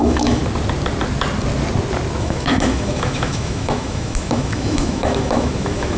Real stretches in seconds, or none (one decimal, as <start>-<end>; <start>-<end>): 0.4-2.2